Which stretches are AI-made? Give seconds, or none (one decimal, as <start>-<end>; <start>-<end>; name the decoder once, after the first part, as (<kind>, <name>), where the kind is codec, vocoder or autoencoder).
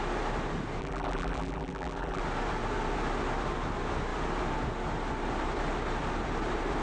0.8-2.2 (vocoder, BigVGAN v2)